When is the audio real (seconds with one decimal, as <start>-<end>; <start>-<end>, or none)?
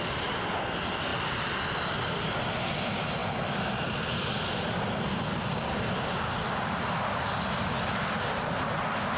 0.0-9.2